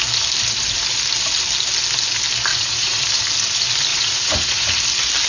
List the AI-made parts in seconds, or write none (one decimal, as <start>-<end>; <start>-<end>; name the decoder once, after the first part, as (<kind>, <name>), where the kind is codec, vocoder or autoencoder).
2.5-3.0 (vocoder, Vocos); 3.9-4.8